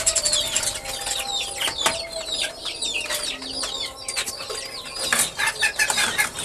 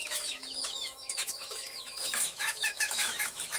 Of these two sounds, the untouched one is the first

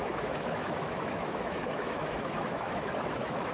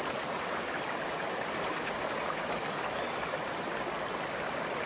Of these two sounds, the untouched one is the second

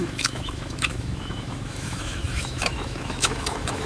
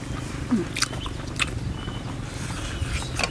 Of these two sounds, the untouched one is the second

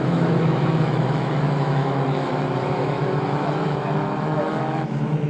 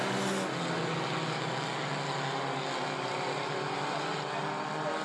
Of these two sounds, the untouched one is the second